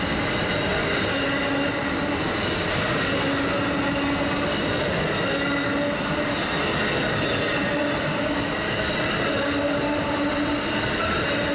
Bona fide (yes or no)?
yes